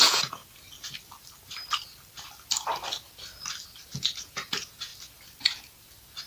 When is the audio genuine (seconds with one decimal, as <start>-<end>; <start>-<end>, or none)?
0.4-4.2; 4.9-6.3